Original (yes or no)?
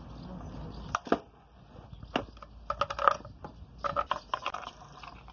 yes